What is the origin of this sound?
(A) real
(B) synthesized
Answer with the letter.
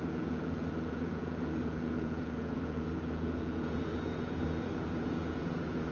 B